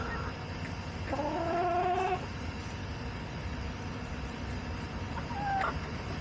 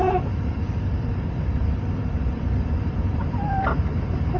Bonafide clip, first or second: first